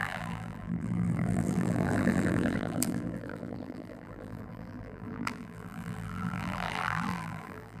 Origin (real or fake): fake